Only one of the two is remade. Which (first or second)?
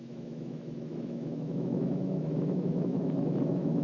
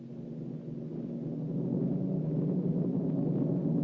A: first